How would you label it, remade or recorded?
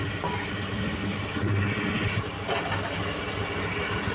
recorded